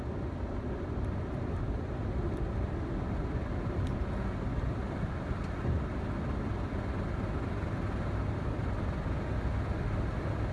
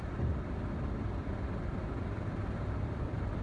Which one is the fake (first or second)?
second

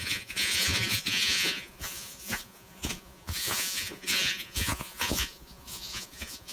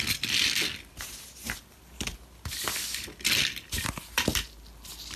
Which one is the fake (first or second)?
first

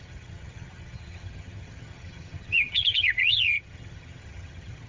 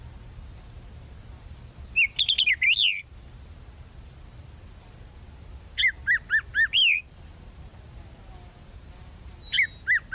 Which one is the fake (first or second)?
first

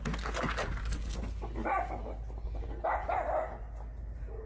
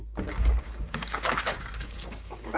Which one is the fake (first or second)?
second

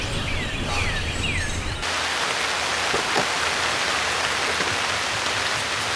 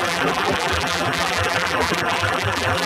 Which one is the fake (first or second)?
second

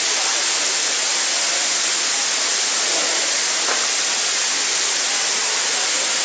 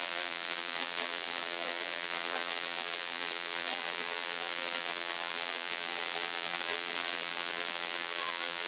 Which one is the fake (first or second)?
second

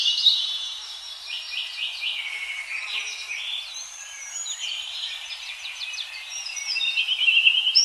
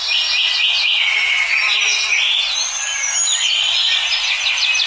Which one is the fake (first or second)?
first